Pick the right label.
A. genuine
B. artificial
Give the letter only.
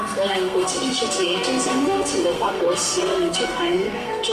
B